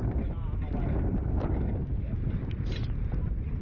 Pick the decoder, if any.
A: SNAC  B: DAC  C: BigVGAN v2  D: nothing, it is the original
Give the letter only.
D